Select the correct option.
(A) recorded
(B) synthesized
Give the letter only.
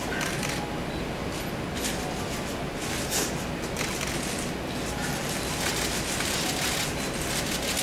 A